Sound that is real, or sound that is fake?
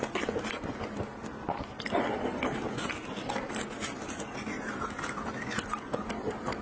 real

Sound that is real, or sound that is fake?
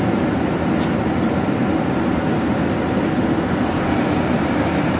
real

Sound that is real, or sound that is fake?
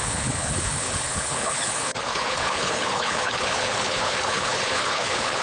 fake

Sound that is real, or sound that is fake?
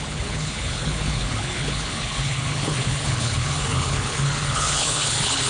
fake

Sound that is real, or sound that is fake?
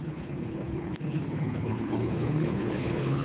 fake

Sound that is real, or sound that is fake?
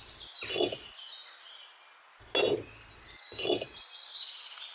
real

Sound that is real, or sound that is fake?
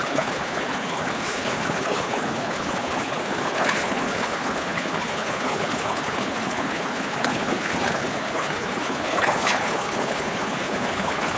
fake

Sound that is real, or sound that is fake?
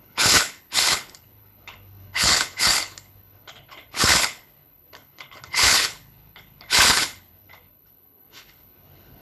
fake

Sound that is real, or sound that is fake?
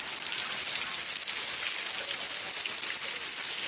real